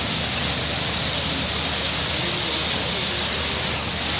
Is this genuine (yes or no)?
yes